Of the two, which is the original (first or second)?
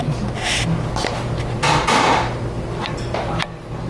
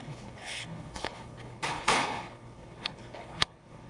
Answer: first